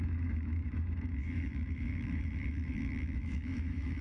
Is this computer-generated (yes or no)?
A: yes